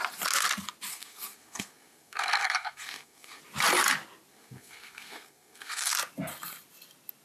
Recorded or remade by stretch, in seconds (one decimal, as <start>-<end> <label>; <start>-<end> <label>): 0.0-0.9 recorded; 0.9-3.4 remade; 3.4-4.3 recorded; 4.3-5.9 remade; 5.9-7.2 recorded